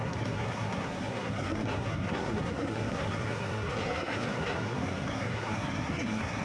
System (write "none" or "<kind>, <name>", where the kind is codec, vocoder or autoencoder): codec, SNAC